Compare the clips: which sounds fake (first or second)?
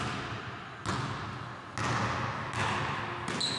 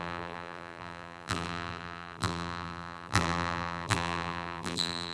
second